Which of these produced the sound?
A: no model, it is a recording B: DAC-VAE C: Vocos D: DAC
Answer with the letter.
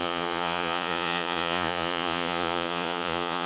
C